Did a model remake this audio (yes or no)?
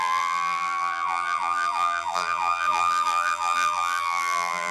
yes